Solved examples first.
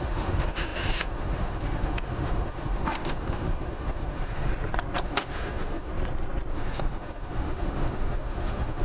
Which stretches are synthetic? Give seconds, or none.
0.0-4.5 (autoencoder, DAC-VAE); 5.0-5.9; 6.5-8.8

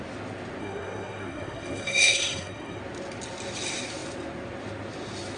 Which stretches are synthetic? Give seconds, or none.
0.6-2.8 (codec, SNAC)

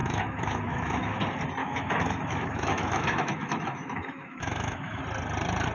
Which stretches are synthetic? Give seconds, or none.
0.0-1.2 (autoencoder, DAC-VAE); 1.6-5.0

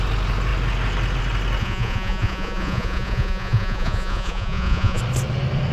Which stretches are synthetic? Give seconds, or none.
1.6-5.0 (vocoder, Vocos)

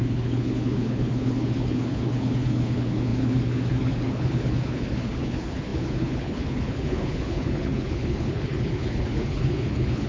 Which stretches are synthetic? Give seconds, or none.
0.0-10.1 (codec, HILCodec)

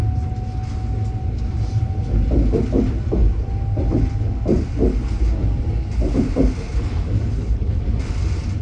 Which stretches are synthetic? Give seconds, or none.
7.3-7.8 (codec, HILCodec)

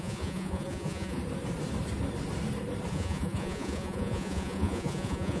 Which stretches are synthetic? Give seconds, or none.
0.0-1.2 (vocoder, Vocos); 2.9-5.4